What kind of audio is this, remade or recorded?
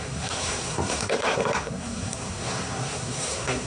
remade